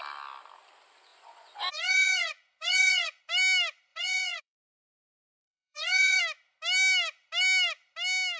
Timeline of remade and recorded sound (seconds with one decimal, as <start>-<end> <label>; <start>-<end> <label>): 0.0-1.1 recorded; 1.1-3.2 remade; 3.2-3.9 recorded; 3.9-6.2 remade; 6.2-8.4 recorded

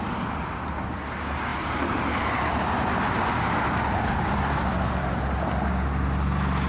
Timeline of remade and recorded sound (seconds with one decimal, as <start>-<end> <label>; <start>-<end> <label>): 0.0-6.7 recorded

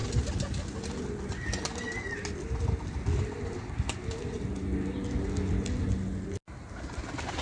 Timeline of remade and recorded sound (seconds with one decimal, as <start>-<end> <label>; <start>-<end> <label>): 0.0-7.4 recorded

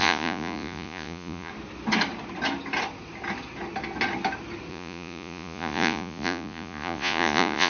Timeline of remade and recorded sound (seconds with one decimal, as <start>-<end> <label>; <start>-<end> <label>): 0.0-1.5 remade; 1.5-4.7 recorded; 4.7-7.7 remade

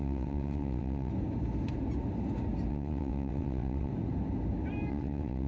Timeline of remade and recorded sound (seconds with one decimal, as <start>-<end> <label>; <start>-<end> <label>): 0.0-1.1 remade; 1.1-2.7 recorded; 2.7-3.9 remade; 3.9-4.9 recorded; 4.9-5.5 remade